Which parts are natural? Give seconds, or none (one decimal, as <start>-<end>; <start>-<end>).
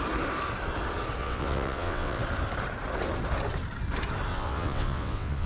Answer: 0.0-1.2; 2.2-4.3